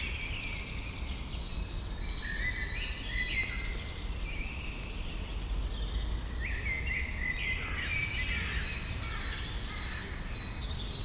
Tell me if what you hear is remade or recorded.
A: recorded